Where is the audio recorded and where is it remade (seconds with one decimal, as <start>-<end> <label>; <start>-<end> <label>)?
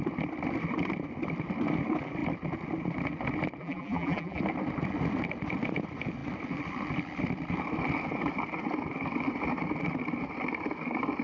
0.0-3.6 recorded; 3.6-4.4 remade; 4.4-11.2 recorded